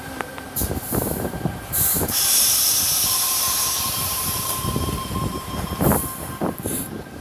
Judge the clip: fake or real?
fake